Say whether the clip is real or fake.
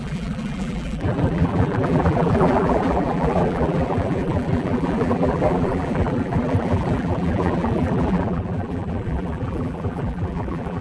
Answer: fake